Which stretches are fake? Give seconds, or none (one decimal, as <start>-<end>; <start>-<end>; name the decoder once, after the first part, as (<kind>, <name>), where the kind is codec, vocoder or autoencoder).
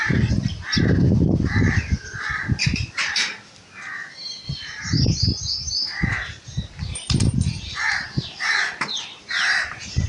0.0-3.3 (vocoder, BigVGAN v2); 4.6-10.1